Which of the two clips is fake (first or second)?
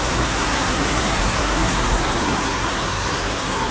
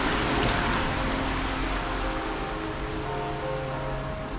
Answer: first